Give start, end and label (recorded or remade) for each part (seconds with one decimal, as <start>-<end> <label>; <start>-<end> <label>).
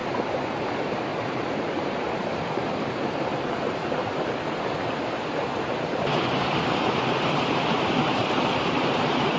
0.0-9.4 remade